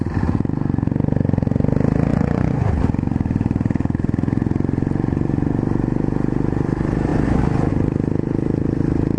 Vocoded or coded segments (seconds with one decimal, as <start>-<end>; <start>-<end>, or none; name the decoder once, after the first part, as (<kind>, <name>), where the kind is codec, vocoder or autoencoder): 2.1-2.8 (vocoder, Vocos)